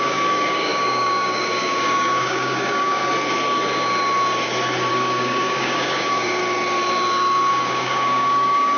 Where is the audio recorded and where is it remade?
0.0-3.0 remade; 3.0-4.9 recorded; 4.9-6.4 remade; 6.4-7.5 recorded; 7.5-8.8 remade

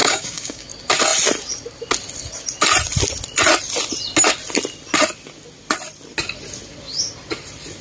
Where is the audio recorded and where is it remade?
0.0-0.7 remade; 0.7-7.8 recorded

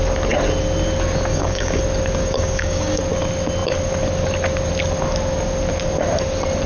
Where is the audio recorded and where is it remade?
0.0-1.3 recorded; 1.3-1.8 remade; 1.8-2.2 recorded; 2.2-3.0 remade; 3.0-6.7 recorded

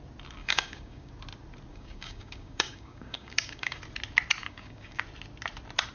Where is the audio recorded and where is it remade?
0.0-0.4 recorded; 0.4-1.1 remade; 1.1-1.7 recorded; 1.7-3.8 remade; 3.8-4.4 recorded; 4.4-5.0 remade; 5.0-5.9 recorded